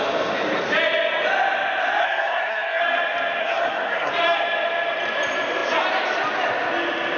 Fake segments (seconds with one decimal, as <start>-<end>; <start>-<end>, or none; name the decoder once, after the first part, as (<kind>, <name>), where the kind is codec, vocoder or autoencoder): 2.0-2.8 (codec, SNAC); 3.4-4.1